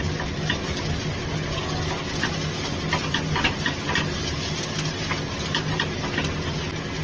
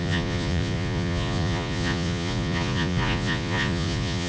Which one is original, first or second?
first